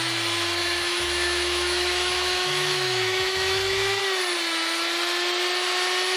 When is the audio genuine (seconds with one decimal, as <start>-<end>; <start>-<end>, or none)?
0.0-0.6; 4.0-6.2